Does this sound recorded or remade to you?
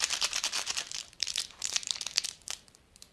remade